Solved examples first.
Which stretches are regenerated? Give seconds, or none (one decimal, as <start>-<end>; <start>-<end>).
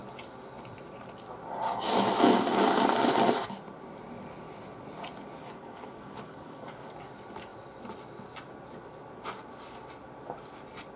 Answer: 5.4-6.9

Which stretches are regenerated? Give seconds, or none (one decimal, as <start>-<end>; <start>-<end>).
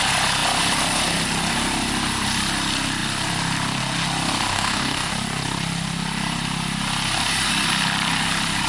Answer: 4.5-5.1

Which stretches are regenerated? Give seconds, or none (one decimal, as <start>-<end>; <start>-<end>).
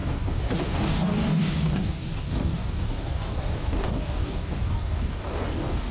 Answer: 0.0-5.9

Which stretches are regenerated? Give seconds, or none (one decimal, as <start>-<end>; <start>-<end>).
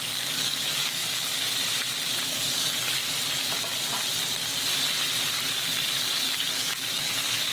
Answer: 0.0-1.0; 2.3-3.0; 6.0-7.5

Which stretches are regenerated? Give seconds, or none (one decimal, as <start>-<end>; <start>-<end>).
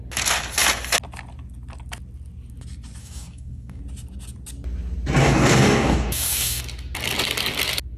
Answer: 3.0-3.8; 5.2-6.6